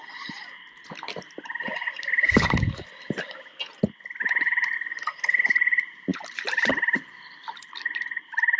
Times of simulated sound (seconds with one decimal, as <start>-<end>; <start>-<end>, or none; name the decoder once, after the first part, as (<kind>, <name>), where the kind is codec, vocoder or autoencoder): 6.1-6.7 (vocoder, BigVGAN v2)